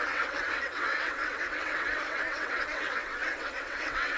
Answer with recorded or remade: remade